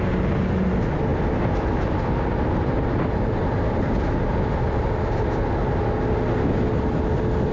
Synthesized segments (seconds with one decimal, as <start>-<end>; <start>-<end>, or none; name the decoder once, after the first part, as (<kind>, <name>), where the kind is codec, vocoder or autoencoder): none